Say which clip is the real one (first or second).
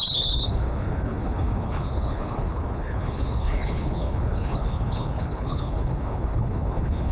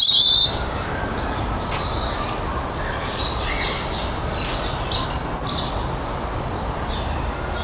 second